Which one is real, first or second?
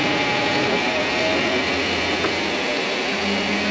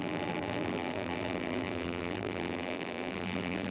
first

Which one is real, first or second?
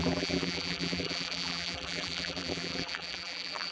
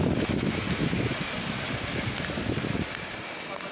second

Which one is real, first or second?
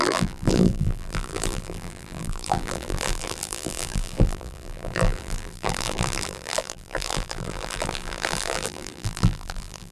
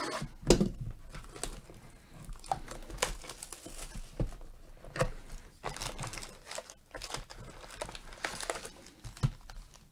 second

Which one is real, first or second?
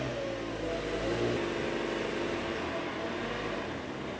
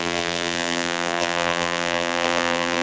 first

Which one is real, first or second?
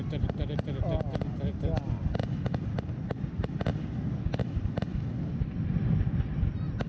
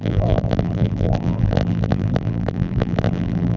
first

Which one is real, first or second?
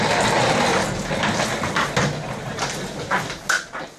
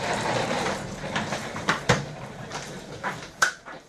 first